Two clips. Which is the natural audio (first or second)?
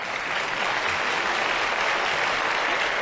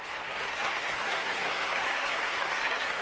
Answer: first